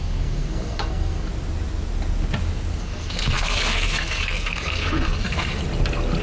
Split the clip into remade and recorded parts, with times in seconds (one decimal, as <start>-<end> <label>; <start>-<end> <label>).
0.0-1.3 remade; 1.3-2.8 recorded; 2.8-5.6 remade; 5.6-6.2 recorded